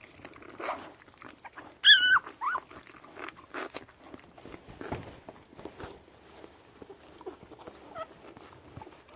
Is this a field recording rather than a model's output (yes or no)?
yes